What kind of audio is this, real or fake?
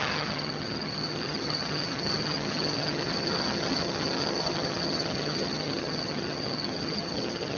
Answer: fake